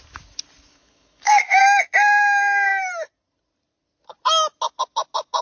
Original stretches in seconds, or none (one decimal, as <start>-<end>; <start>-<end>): 0.0-0.7; 1.6-5.4